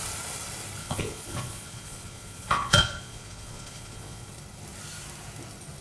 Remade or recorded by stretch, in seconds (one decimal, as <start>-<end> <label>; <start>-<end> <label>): 0.0-0.8 recorded; 0.8-4.3 remade; 4.3-5.8 recorded